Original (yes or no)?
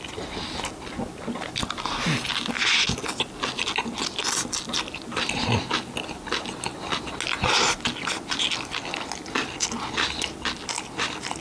yes